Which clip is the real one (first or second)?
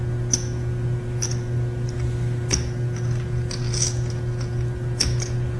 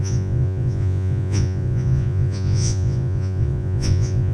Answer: first